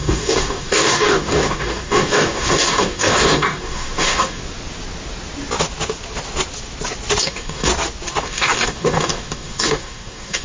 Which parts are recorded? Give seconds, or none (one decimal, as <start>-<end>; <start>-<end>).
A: 4.4-7.2; 7.7-8.2